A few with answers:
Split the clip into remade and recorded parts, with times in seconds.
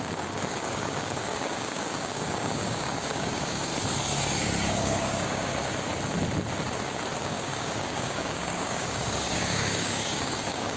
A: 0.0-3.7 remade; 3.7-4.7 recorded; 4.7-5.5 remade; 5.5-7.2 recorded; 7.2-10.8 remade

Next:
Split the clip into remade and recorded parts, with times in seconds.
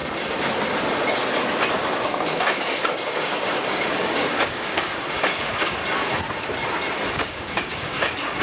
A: 0.0-1.7 recorded; 1.7-5.8 remade; 5.8-7.1 recorded; 7.1-8.4 remade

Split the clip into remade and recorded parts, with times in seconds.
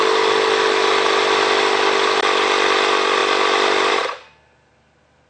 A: 0.0-5.3 recorded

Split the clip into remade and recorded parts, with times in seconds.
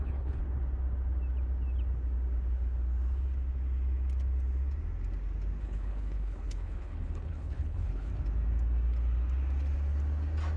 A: 0.0-0.4 remade; 0.4-5.6 recorded; 5.6-8.1 remade; 8.1-10.6 recorded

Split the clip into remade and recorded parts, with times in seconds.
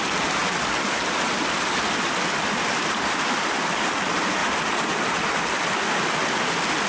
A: 0.0-4.4 recorded; 4.4-5.1 remade; 5.1-6.9 recorded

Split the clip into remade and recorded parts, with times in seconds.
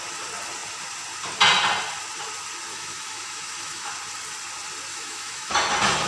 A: 0.0-2.7 recorded; 2.7-3.9 remade; 3.9-4.9 recorded; 4.9-5.5 remade; 5.5-6.1 recorded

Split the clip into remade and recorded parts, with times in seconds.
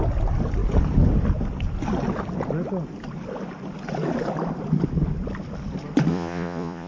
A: 0.0-6.1 recorded; 6.1-6.9 remade